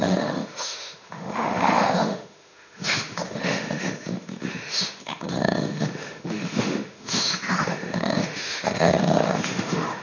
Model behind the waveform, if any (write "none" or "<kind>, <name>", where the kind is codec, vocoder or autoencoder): autoencoder, DAC-VAE